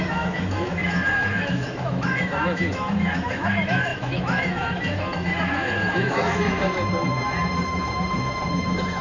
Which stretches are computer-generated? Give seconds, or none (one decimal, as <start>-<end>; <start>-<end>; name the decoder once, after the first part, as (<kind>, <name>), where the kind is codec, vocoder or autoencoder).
0.0-9.0 (autoencoder, DAC-VAE)